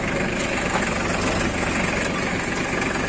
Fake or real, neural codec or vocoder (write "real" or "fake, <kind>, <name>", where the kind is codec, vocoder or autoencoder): real